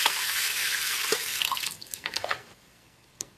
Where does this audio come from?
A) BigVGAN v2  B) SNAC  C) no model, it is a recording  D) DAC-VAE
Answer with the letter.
B